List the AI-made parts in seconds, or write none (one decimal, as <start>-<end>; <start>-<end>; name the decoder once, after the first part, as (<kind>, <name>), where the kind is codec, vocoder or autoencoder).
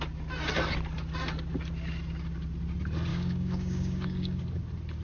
3.1-4.4 (codec, DAC)